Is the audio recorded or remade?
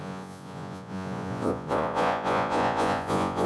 remade